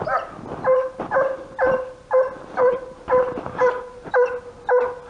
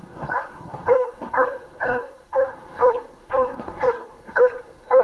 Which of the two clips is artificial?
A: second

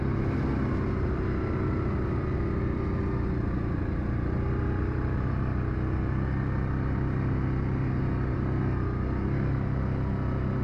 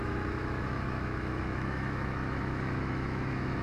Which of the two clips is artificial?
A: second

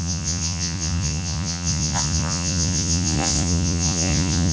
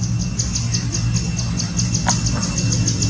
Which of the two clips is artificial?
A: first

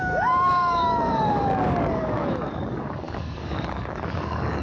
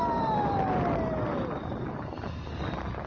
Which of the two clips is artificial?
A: first